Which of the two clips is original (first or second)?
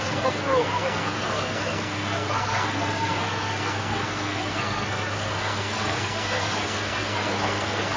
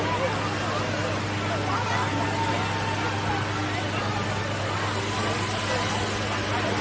second